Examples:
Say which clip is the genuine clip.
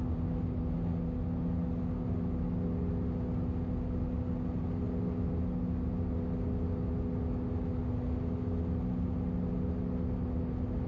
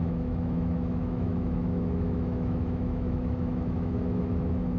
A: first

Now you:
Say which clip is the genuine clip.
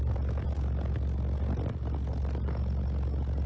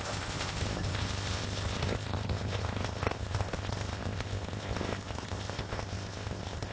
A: first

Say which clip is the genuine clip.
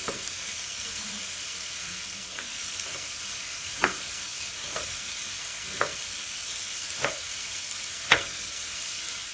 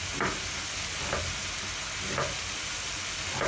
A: second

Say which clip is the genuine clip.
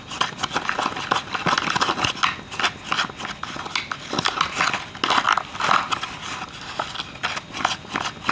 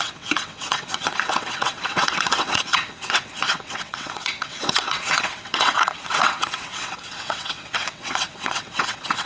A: first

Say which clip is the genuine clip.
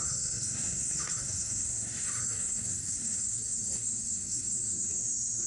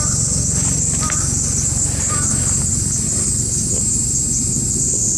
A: second